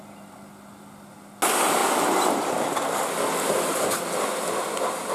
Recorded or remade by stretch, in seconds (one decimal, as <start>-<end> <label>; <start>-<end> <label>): 0.0-5.1 recorded